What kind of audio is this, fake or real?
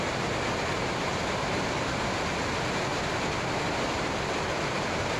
real